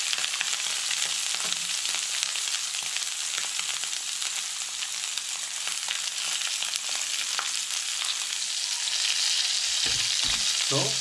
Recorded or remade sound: recorded